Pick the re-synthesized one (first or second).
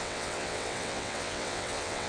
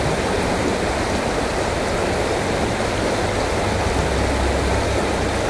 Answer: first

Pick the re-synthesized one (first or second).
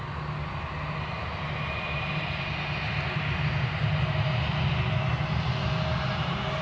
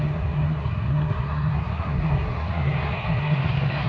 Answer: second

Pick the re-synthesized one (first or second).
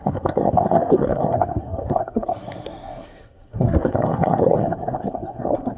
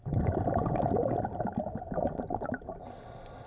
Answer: first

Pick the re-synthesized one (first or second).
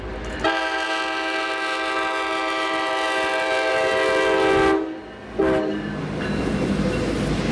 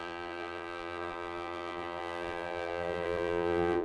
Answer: second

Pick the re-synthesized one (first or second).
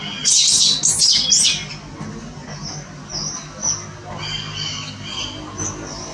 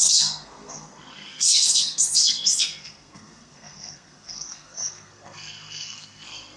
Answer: second